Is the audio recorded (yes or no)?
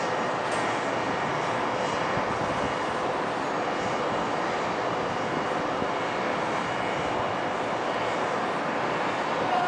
yes